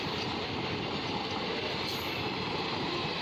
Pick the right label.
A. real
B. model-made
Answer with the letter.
A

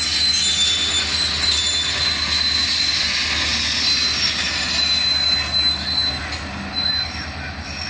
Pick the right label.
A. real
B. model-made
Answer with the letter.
A